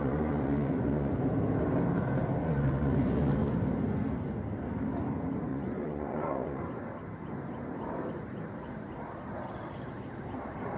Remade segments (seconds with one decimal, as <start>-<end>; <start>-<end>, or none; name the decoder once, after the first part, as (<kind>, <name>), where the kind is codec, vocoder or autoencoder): 0.0-1.1 (vocoder, Vocos); 2.4-3.5; 5.5-6.6